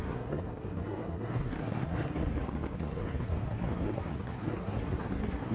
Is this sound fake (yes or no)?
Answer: yes